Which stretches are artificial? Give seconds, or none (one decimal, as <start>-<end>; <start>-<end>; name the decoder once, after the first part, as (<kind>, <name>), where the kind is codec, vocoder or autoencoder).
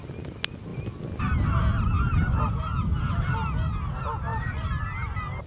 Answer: 4.3-4.8 (vocoder, BigVGAN v2)